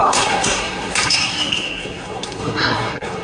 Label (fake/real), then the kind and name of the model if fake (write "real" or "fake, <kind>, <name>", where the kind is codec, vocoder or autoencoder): fake, codec, SNAC